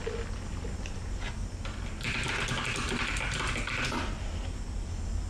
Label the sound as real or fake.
real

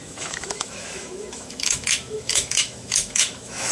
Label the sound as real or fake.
fake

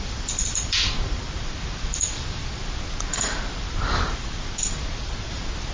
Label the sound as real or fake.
fake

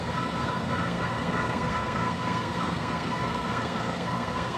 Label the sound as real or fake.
fake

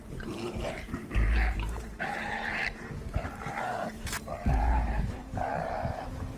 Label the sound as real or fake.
fake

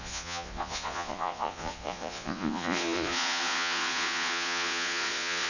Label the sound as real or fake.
fake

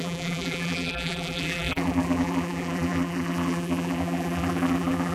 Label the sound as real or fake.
fake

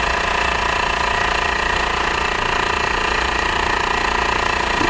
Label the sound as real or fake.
fake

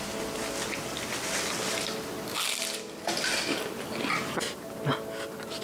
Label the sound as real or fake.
real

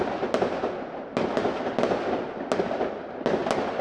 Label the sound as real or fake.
real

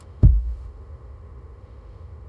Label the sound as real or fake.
fake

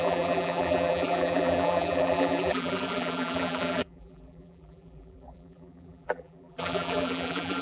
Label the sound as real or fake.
fake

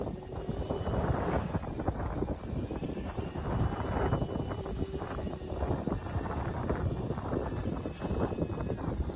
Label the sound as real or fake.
real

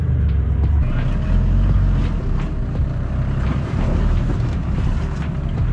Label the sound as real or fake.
real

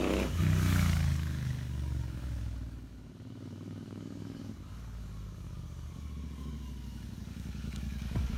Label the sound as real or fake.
fake